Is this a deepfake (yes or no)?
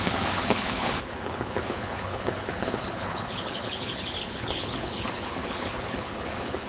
yes